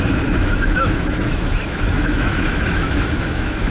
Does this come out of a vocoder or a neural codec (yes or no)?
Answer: yes